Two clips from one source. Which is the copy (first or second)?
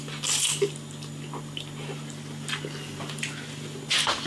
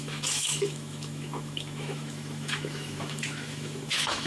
second